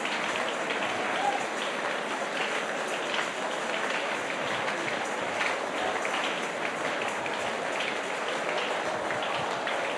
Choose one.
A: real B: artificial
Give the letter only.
A